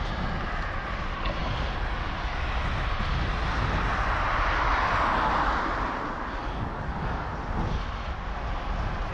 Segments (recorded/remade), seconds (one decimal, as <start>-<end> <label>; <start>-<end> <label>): 0.0-6.4 recorded; 6.4-7.3 remade; 7.3-9.1 recorded

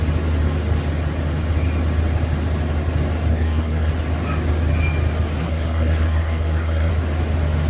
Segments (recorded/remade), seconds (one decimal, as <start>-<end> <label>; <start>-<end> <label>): 0.0-3.3 recorded; 3.3-3.9 remade; 3.9-5.4 recorded; 5.4-6.9 remade; 6.9-7.7 recorded

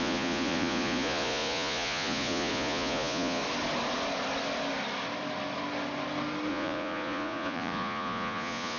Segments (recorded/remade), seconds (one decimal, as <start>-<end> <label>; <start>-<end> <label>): 0.0-3.4 remade; 3.4-6.5 recorded; 6.5-8.8 remade

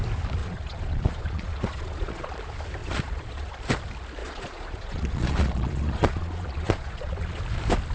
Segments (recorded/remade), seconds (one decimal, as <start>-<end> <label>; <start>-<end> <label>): 0.0-0.4 recorded; 0.4-2.3 remade; 2.3-2.8 recorded; 2.8-3.5 remade; 3.5-4.2 recorded; 4.2-7.4 remade; 7.4-7.9 recorded

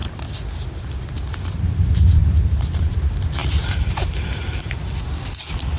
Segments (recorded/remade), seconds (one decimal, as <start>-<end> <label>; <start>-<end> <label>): 0.0-2.2 recorded; 2.2-2.9 remade; 2.9-3.4 recorded; 3.4-4.2 remade; 4.2-5.8 recorded